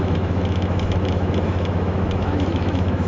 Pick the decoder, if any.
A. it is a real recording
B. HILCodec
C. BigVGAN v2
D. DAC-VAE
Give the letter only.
D